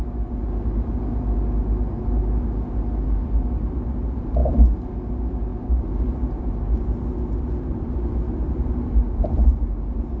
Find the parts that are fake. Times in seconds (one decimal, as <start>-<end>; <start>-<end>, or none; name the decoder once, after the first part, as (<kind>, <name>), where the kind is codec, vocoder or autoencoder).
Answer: none